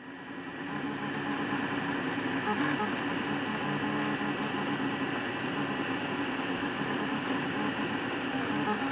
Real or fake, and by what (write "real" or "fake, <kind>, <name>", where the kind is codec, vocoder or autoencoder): real